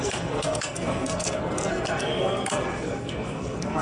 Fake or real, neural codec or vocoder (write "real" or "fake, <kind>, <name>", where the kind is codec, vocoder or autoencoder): fake, codec, SNAC